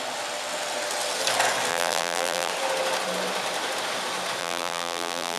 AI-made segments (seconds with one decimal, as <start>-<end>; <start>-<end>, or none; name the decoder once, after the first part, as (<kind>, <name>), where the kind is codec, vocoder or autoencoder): 1.7-2.5 (vocoder, BigVGAN v2); 4.4-5.4